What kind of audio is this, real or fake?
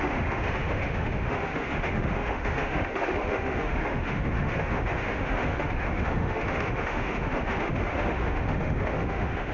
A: fake